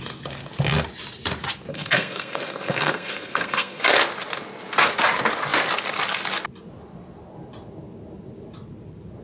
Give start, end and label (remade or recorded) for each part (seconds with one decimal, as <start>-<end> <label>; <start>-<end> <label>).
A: 0.0-1.7 recorded; 1.7-3.8 remade; 3.8-9.2 recorded

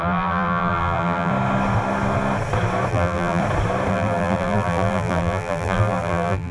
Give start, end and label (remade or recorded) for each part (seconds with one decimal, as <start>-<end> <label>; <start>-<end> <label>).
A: 0.0-1.3 remade; 1.3-2.9 recorded; 2.9-3.4 remade; 3.4-3.9 recorded; 3.9-6.5 remade

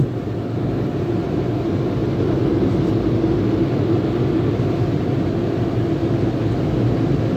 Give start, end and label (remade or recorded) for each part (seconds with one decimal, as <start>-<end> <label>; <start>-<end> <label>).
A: 0.0-7.4 recorded

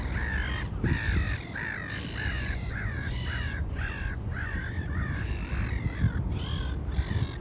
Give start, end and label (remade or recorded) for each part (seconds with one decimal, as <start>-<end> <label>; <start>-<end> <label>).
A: 0.0-2.3 recorded; 2.3-5.3 remade; 5.3-7.4 recorded

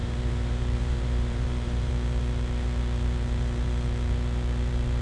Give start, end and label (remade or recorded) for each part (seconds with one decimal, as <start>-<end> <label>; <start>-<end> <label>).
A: 0.0-1.9 remade; 1.9-5.0 recorded

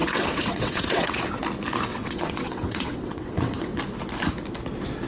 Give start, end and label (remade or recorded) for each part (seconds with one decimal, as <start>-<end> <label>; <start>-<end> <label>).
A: 0.0-1.2 remade; 1.2-1.9 recorded; 1.9-3.8 remade; 3.8-5.1 recorded

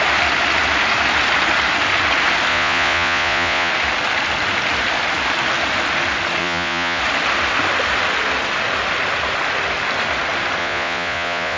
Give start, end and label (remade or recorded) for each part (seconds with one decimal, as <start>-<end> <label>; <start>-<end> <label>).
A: 0.0-2.5 recorded; 2.5-3.7 remade; 3.7-6.4 recorded; 6.4-7.0 remade; 7.0-10.6 recorded; 10.6-11.6 remade